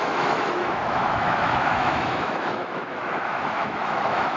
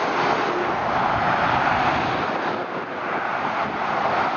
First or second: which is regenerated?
first